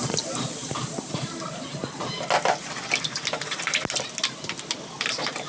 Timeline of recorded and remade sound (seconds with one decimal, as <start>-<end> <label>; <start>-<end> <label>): 0.0-5.5 recorded